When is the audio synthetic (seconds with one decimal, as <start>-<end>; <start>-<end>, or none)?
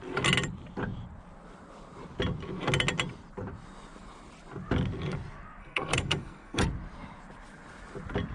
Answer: 5.6-6.6